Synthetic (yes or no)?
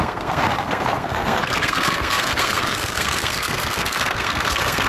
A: yes